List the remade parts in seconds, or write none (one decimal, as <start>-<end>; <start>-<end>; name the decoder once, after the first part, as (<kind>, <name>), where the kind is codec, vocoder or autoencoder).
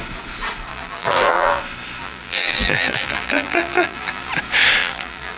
0.7-1.6 (vocoder, BigVGAN v2); 2.0-4.3; 4.8-5.4